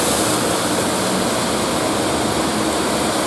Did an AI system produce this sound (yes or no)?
no